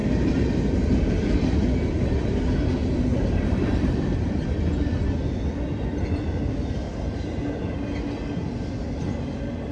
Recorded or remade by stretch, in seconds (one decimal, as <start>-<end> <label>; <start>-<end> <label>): 0.0-2.4 remade; 2.4-3.1 recorded; 3.1-4.3 remade; 4.3-9.7 recorded